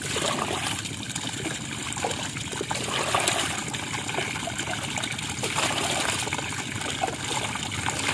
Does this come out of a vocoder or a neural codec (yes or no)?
no